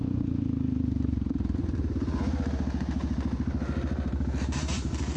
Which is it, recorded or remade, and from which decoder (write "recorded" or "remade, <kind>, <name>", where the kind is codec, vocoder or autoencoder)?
remade, vocoder, BigVGAN v2